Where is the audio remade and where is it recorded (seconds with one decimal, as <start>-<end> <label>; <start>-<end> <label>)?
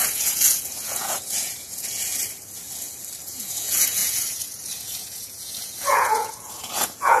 0.0-2.1 remade; 2.1-3.2 recorded; 3.2-7.2 remade